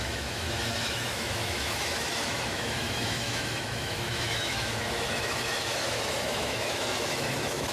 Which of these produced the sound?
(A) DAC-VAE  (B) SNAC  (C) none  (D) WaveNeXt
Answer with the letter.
A